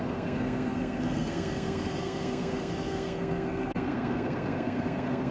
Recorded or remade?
remade